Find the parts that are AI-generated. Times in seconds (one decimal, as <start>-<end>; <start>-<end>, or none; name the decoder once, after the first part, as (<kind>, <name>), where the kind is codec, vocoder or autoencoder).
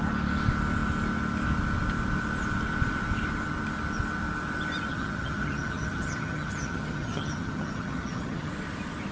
4.9-8.5 (vocoder, HiFi-GAN)